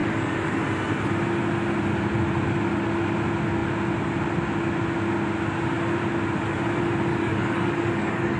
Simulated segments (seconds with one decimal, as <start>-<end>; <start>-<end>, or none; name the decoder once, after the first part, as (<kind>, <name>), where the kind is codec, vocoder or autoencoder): 0.0-0.6 (codec, DAC); 7.1-8.4